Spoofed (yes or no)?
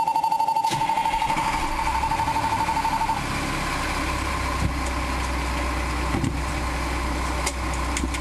no